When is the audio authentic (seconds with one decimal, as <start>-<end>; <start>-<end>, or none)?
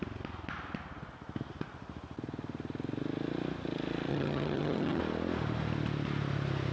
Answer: 0.0-4.1; 5.0-6.7